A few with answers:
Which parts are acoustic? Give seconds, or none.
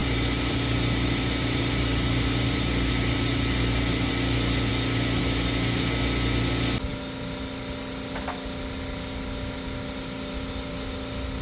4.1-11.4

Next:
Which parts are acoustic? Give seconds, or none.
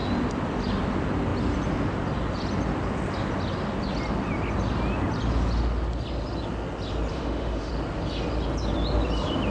0.0-7.1; 7.7-9.5